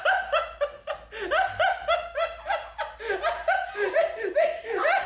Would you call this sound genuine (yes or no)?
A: yes